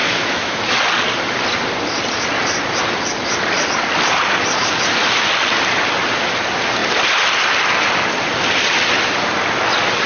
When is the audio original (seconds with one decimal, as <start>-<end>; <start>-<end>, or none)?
0.7-10.1